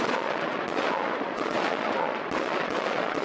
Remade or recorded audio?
remade